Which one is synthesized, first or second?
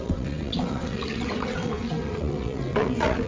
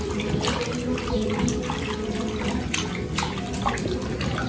first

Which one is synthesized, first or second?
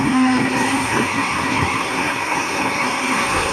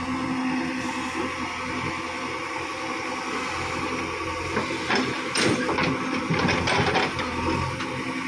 first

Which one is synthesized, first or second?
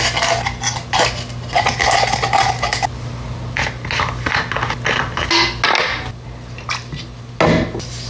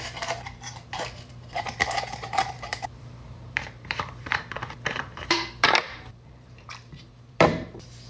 second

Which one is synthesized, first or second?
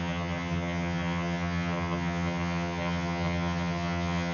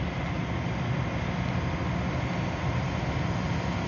first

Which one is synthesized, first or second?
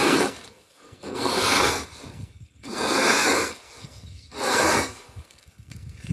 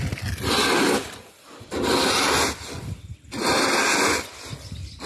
first